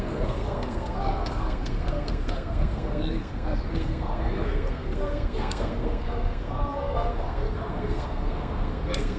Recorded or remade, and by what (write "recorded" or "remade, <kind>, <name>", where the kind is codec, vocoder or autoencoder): remade, codec, SNAC